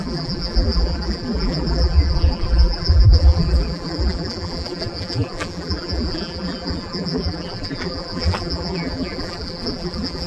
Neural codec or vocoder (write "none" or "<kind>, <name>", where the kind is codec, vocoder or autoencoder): vocoder, BigVGAN v2